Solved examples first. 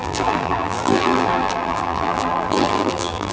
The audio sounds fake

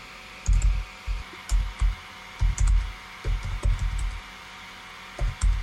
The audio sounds real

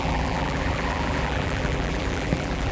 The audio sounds fake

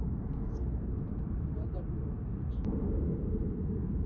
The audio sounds fake